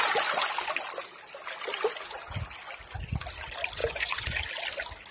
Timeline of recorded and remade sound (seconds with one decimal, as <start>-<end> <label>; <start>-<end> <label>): 0.0-3.8 recorded; 3.8-4.4 remade; 4.4-5.1 recorded